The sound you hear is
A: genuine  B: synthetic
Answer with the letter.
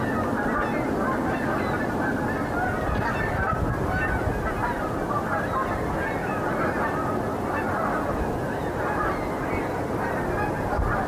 A